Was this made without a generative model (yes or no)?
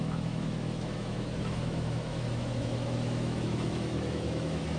no